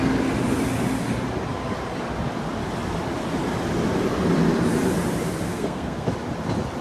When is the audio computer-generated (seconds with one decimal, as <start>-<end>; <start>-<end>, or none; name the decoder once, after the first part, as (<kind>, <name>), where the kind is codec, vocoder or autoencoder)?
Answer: 5.5-6.1 (codec, SNAC)